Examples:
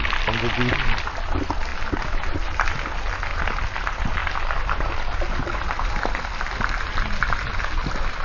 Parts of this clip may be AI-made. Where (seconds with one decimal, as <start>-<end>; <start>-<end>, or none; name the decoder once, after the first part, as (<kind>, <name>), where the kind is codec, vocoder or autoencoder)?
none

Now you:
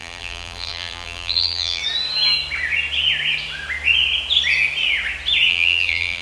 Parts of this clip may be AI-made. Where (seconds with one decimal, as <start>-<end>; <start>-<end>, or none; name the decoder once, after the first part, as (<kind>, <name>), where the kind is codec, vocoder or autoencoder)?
0.0-1.8 (vocoder, BigVGAN v2); 5.5-6.2

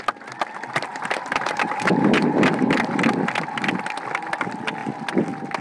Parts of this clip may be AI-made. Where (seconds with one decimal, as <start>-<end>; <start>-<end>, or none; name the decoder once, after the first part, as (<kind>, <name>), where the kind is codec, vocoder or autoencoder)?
0.9-2.7 (vocoder, BigVGAN v2)

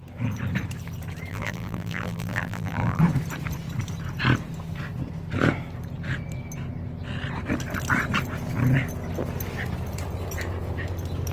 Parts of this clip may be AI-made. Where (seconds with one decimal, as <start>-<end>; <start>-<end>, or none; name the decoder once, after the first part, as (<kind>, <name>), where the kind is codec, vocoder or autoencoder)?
1.3-3.0 (vocoder, BigVGAN v2)